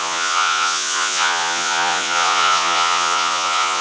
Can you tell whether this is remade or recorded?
remade